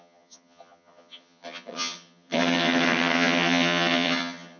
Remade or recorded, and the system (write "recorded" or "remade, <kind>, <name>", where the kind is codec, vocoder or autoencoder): remade, vocoder, HiFi-GAN